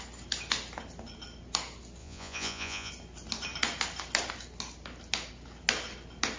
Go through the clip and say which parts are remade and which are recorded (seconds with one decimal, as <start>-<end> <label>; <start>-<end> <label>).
0.0-2.0 recorded; 2.0-2.9 remade; 2.9-6.4 recorded